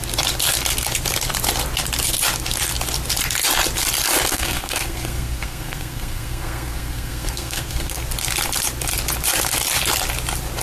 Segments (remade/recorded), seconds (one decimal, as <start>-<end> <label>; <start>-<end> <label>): 0.0-4.3 recorded; 4.3-8.0 remade; 8.0-10.6 recorded